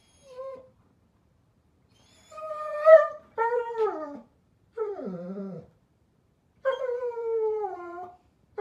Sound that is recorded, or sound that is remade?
remade